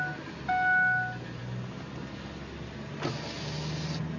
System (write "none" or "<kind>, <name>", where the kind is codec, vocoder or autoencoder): none